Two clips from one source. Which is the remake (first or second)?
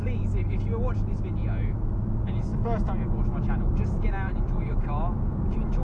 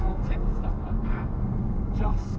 second